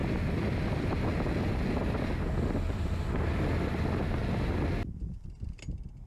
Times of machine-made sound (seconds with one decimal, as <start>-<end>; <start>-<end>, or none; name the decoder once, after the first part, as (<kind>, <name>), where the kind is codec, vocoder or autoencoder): none